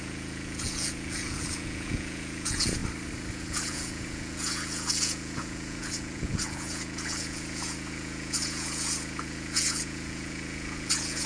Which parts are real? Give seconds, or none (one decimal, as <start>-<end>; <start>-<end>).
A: 2.8-3.3